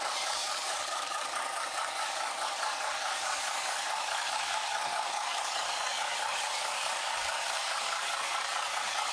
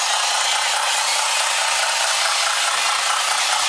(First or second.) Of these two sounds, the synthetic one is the first